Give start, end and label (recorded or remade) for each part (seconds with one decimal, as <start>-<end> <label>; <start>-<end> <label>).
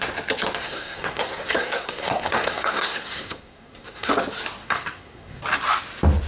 0.0-0.6 recorded; 0.6-4.1 remade; 4.1-4.6 recorded; 4.6-5.4 remade; 5.4-6.3 recorded